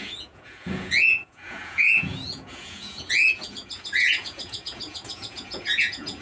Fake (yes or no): yes